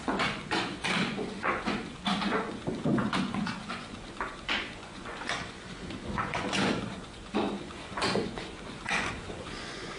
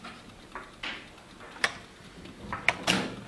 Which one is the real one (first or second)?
second